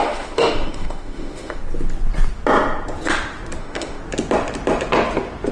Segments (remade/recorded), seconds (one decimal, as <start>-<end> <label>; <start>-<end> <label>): 0.0-1.6 remade; 1.6-3.6 recorded; 3.6-4.0 remade; 4.0-5.5 recorded